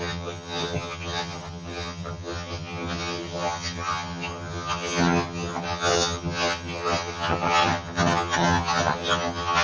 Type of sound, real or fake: fake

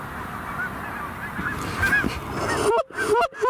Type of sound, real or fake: real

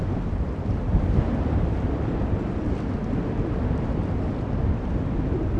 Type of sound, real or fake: real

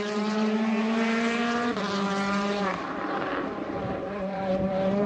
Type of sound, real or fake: fake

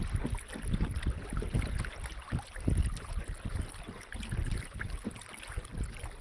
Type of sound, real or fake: real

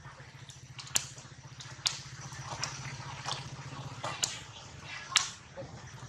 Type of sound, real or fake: real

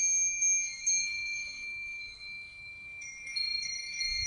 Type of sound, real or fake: fake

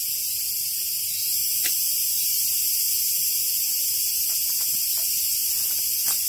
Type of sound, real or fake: real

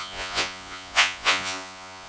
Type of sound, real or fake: fake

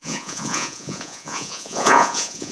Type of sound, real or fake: fake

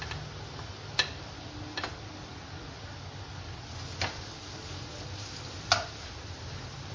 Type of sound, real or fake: real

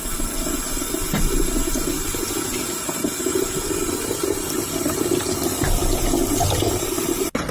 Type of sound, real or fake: real